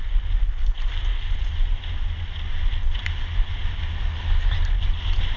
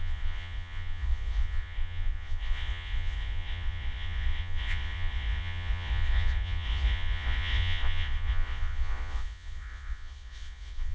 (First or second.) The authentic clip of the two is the first